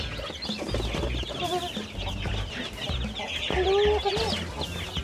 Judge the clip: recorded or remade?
recorded